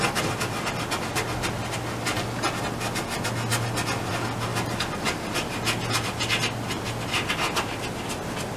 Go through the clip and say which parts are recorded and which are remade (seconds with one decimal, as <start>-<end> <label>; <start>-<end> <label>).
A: 0.0-8.6 recorded